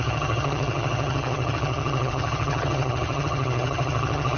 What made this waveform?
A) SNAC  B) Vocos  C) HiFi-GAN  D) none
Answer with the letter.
C